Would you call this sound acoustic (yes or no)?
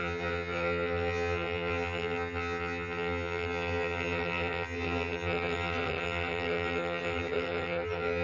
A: no